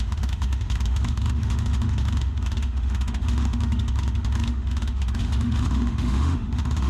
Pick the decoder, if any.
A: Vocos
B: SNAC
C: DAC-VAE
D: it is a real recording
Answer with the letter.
C